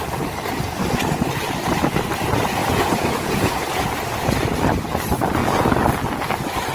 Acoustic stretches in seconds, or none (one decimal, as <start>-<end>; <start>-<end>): 0.0-2.6; 3.5-6.7